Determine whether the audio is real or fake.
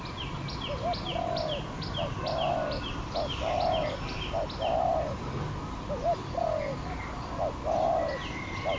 real